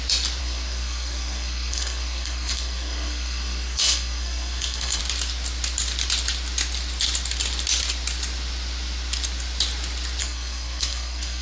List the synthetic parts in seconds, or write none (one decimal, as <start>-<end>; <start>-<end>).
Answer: 0.4-5.0; 10.2-11.4